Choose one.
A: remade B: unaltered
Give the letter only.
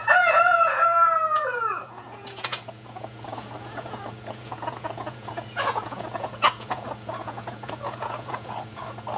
A